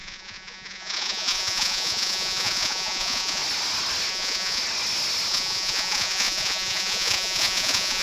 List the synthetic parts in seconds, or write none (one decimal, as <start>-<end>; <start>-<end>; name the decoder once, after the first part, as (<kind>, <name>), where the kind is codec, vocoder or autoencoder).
0.0-3.4 (vocoder, Vocos); 4.1-4.6; 5.3-8.0